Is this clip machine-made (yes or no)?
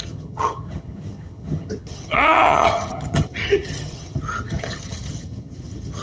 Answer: yes